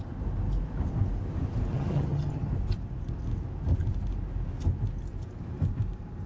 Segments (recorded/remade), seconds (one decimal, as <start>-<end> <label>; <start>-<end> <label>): 0.0-1.7 recorded; 1.7-2.5 remade; 2.5-6.3 recorded